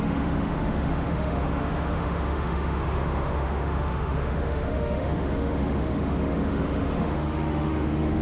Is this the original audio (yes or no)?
no